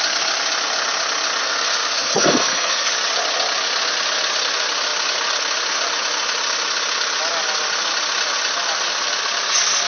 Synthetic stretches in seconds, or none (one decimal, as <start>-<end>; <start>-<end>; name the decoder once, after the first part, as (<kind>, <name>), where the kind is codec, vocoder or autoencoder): 1.4-2.9 (codec, SNAC)